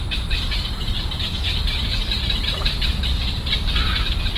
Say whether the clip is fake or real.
fake